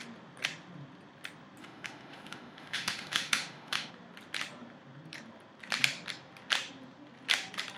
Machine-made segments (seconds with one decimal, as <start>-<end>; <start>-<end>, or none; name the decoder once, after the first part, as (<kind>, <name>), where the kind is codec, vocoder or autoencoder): 1.6-3.9 (autoencoder, DAC-VAE)